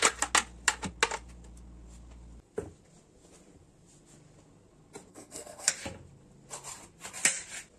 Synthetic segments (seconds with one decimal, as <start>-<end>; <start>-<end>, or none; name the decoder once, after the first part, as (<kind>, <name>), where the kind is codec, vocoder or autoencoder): 5.1-5.7 (codec, SNAC)